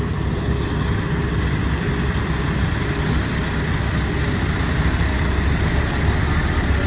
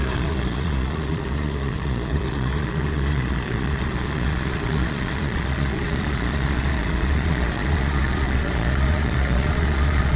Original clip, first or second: first